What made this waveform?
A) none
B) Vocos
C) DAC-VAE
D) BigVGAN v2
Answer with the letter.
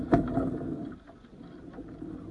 A